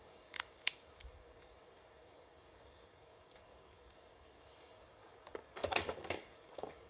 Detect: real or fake fake